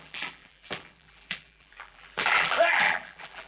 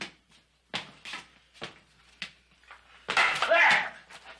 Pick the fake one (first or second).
first